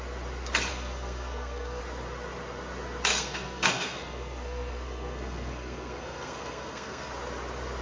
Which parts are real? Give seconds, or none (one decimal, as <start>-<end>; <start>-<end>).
0.0-0.7; 1.8-3.1; 7.1-7.8